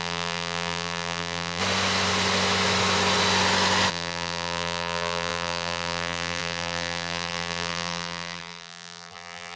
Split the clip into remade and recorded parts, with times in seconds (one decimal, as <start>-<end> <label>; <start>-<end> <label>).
0.0-1.6 remade; 1.6-3.9 recorded; 3.9-9.6 remade